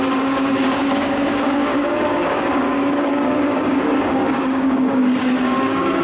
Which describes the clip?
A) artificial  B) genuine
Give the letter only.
A